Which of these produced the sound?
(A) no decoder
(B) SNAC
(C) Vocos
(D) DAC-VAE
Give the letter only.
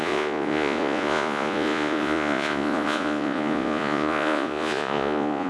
C